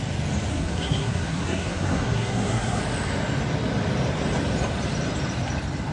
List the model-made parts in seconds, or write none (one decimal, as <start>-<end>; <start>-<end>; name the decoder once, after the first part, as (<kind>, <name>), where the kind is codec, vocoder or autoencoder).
0.5-2.8 (codec, SNAC)